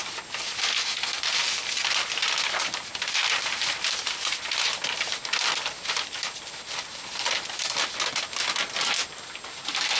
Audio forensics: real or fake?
real